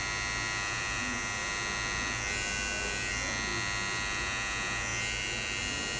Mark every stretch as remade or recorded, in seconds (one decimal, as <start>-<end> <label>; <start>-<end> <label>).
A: 0.0-6.0 recorded